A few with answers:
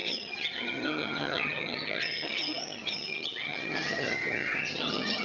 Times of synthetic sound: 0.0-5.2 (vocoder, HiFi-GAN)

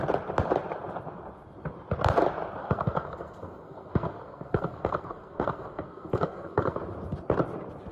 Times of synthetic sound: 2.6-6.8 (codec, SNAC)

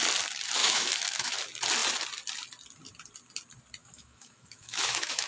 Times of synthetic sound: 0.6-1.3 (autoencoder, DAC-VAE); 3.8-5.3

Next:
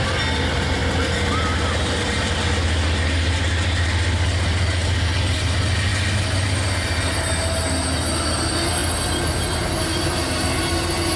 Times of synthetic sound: none

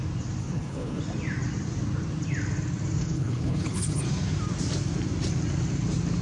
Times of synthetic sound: 0.4-1.0 (codec, HILCodec); 3.0-4.0

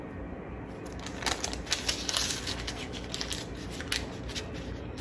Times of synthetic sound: 2.5-3.1 (codec, SNAC)

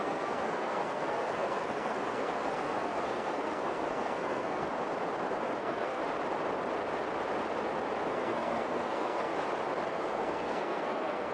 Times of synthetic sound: 0.0-4.7 (codec, SNAC); 5.6-6.0; 8.1-9.3; 9.9-11.3